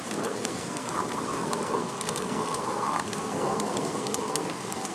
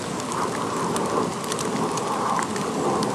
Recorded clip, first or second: second